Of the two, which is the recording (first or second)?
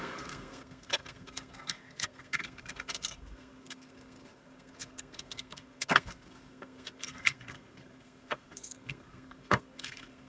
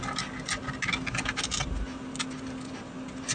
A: second